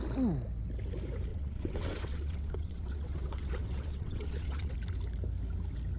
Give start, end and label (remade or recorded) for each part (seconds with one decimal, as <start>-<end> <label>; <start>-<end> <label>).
0.0-1.3 recorded; 1.3-4.7 remade; 4.7-6.0 recorded